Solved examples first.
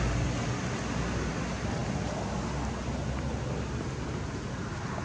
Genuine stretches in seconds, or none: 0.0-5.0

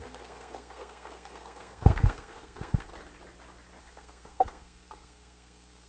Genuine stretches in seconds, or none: 2.9-3.8

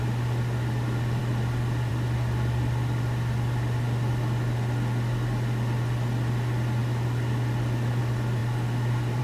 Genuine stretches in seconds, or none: 0.0-9.2

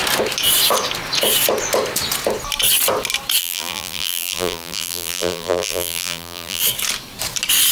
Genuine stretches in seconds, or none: 0.0-3.4; 6.6-7.7

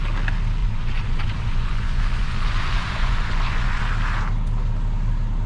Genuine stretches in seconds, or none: 0.0-0.6; 3.8-5.5

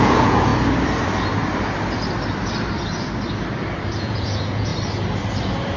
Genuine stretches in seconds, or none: 0.5-4.0; 4.7-5.8

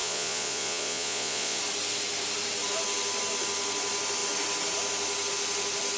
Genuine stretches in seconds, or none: 1.6-6.0